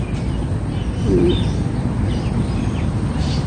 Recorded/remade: recorded